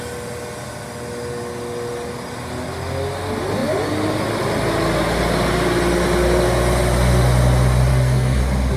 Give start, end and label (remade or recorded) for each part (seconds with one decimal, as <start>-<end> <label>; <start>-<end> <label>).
0.0-7.9 recorded; 7.9-8.4 remade; 8.4-8.8 recorded